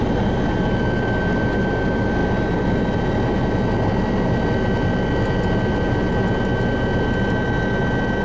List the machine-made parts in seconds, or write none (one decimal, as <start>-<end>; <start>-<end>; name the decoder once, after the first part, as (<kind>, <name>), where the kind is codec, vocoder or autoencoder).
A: none

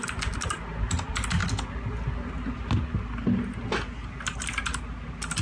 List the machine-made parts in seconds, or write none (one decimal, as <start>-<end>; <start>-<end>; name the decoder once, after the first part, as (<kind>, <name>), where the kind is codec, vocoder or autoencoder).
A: none